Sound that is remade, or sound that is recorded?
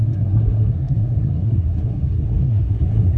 remade